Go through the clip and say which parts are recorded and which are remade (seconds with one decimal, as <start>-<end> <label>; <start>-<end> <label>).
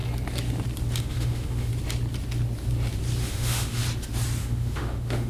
0.0-1.0 recorded; 1.0-1.7 remade; 1.7-3.2 recorded; 3.2-3.8 remade; 3.8-4.4 recorded; 4.4-5.3 remade